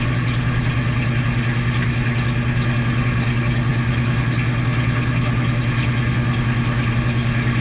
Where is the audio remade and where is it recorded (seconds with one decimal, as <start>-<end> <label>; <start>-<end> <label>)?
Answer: 0.0-7.6 recorded